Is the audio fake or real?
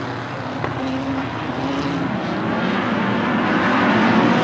real